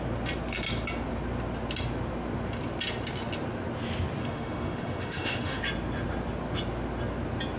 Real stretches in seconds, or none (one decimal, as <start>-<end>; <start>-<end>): 0.0-4.2; 5.6-7.6